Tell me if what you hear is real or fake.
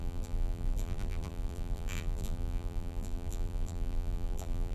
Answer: fake